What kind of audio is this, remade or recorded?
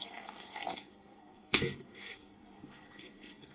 remade